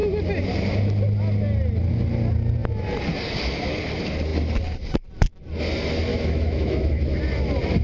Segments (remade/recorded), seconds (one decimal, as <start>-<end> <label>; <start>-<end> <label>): 0.0-6.1 recorded; 6.1-7.2 remade; 7.2-7.8 recorded